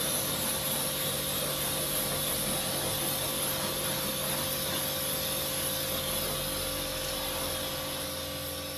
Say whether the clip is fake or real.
real